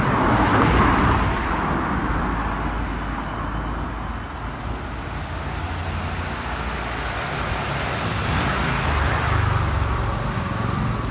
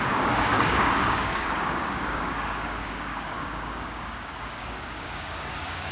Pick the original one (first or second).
first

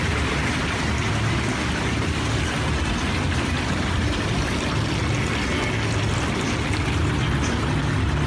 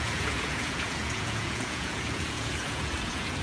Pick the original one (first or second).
first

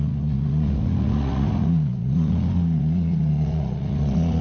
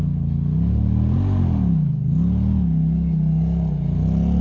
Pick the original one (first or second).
second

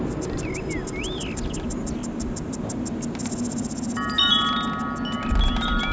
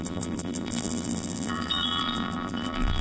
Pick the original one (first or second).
first